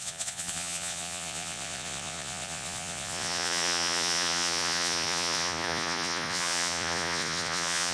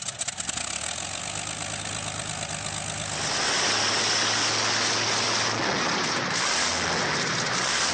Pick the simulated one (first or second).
first